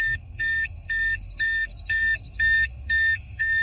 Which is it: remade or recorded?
remade